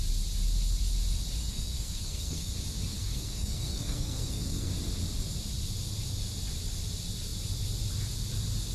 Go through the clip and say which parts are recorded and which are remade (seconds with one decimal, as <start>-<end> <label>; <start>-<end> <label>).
0.0-1.5 recorded; 1.5-2.5 remade; 2.5-2.9 recorded; 2.9-4.7 remade; 4.7-8.7 recorded